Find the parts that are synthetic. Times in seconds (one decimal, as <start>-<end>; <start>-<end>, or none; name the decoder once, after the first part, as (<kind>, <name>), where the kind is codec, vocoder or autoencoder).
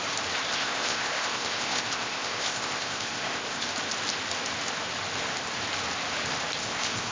0.5-3.7 (codec, ZipCodec); 6.6-7.1